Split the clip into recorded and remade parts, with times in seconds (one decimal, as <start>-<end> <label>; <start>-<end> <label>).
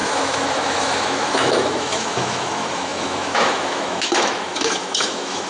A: 0.0-5.5 remade